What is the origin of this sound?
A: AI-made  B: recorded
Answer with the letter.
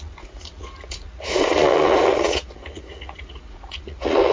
A